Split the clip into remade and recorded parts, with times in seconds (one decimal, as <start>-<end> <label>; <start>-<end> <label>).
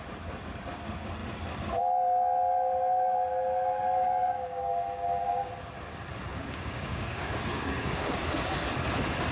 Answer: 0.0-4.2 recorded; 4.2-5.5 remade; 5.5-6.3 recorded; 6.3-8.2 remade; 8.2-9.3 recorded